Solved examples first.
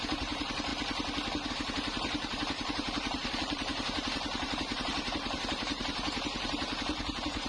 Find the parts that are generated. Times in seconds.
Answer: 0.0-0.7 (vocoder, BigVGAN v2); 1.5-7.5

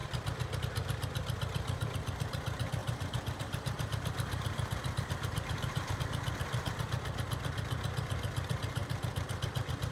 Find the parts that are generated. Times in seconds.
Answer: 2.8-6.0 (vocoder, BigVGAN v2)

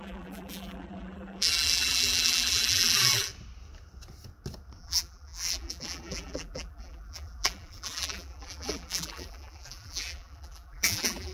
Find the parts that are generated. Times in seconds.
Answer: 0.0-3.3 (vocoder, BigVGAN v2); 4.8-11.3

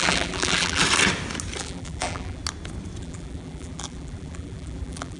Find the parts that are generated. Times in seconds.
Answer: 0.0-0.8 (vocoder, BigVGAN v2); 1.6-2.4; 3.0-5.2

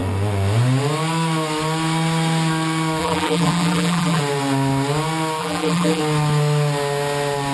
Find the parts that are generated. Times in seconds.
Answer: 3.0-4.2 (vocoder, BigVGAN v2); 5.4-6.0

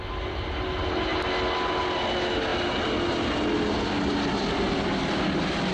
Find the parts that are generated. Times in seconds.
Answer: none

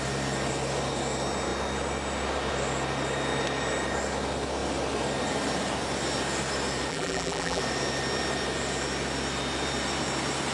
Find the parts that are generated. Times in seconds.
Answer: 6.9-7.6 (vocoder, BigVGAN v2)

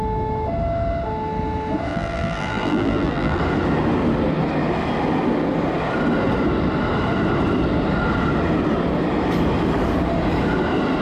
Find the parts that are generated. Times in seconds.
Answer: 1.9-3.4 (vocoder, BigVGAN v2)